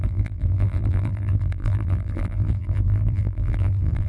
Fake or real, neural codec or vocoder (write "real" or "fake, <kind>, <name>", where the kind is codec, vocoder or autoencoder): fake, vocoder, BigVGAN v2